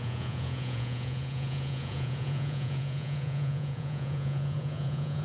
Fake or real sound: fake